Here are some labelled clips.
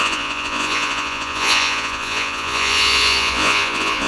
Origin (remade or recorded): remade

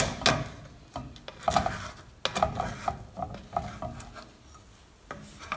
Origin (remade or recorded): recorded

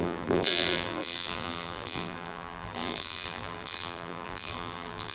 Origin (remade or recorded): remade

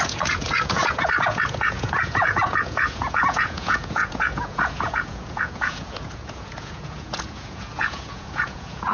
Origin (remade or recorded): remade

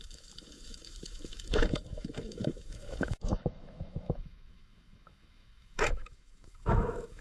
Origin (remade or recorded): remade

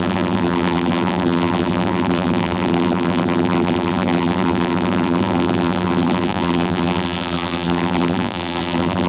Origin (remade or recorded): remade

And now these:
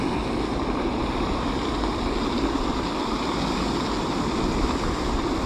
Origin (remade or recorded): recorded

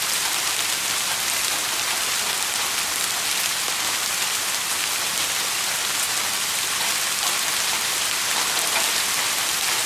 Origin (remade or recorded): recorded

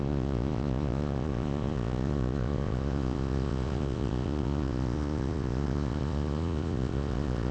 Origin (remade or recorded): remade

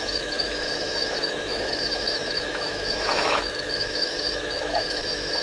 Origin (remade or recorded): remade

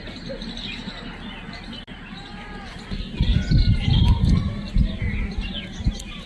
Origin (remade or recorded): recorded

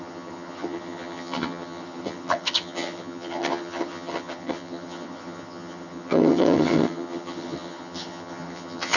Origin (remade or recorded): remade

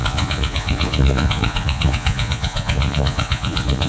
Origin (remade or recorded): remade